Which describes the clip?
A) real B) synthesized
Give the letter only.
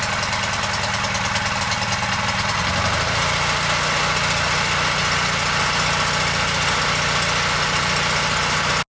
A